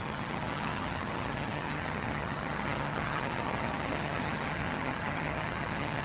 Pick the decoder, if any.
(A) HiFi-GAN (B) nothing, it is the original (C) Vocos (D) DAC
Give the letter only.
A